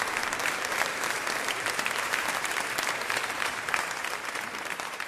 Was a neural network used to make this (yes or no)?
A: yes